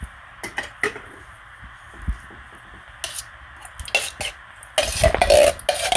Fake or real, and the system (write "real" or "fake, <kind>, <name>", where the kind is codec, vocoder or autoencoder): real